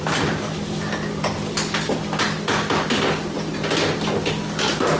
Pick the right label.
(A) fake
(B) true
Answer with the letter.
B